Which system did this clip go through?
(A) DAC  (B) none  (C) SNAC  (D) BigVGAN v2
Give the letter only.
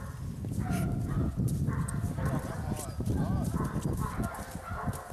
B